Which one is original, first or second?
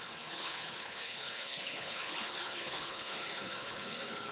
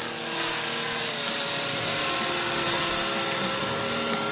second